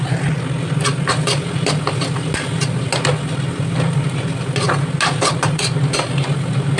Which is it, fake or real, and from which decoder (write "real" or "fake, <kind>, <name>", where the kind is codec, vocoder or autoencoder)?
real